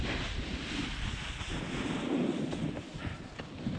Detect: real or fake real